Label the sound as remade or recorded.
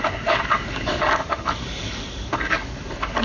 remade